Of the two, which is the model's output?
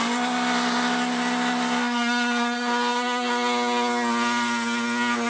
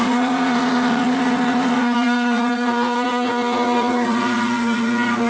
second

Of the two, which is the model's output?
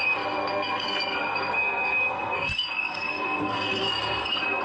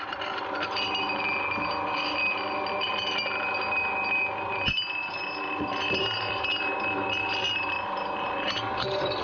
first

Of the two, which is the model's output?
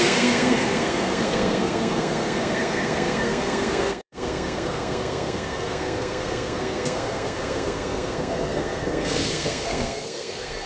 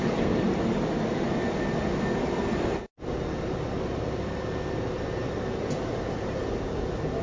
first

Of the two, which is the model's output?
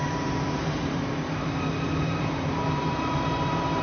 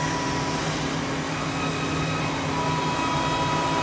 first